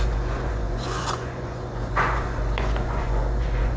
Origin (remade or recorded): remade